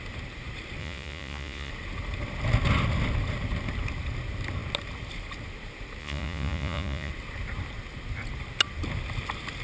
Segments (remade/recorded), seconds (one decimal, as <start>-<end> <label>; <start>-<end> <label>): 0.0-0.8 recorded; 0.8-1.7 remade; 1.7-6.0 recorded; 6.0-7.1 remade; 7.1-9.6 recorded